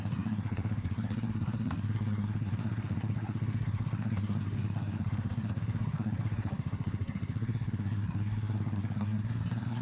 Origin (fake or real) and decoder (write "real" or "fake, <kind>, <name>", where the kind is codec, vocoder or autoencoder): fake, codec, SNAC